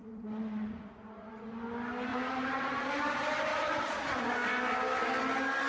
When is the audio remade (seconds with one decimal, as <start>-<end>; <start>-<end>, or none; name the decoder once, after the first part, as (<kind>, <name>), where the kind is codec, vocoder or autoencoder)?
0.0-1.5 (vocoder, Vocos); 2.1-2.9; 3.5-4.0